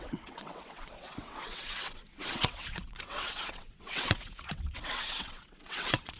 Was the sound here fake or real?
fake